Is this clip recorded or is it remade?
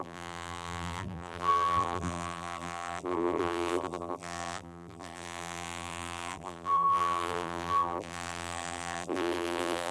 remade